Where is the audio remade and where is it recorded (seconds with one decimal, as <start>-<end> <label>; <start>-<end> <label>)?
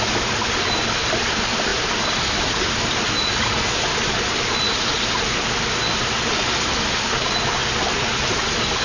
0.0-8.8 recorded